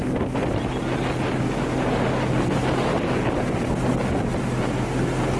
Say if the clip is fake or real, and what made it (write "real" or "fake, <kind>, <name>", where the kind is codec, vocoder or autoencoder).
real